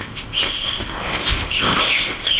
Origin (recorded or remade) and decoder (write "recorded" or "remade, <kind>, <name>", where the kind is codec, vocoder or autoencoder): remade, codec, ZipCodec